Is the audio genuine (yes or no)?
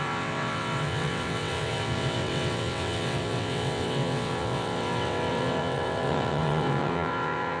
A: no